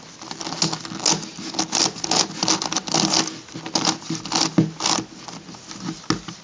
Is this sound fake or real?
real